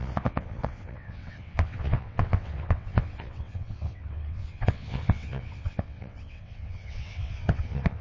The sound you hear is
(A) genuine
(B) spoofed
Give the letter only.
B